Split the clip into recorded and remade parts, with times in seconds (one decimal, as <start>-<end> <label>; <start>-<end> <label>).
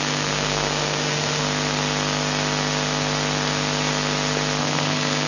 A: 0.0-1.4 remade; 1.4-4.6 recorded; 4.6-5.3 remade